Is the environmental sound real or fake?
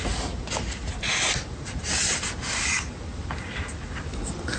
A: real